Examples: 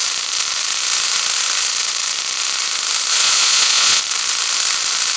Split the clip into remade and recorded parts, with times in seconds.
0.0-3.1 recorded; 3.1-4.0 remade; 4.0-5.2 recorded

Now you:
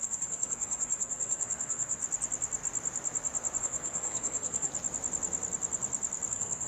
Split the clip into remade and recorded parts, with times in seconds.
0.0-2.0 remade; 2.0-3.6 recorded; 3.6-4.7 remade; 4.7-6.3 recorded; 6.3-6.7 remade